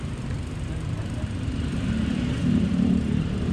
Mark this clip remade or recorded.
remade